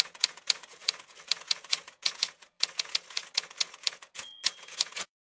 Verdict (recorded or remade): remade